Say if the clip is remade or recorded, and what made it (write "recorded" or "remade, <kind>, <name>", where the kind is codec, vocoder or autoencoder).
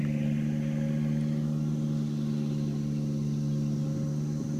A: recorded